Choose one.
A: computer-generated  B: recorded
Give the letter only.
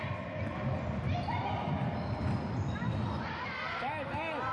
B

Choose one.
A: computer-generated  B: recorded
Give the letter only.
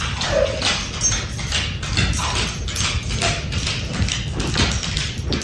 B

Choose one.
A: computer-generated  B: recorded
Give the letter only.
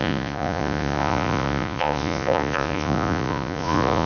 A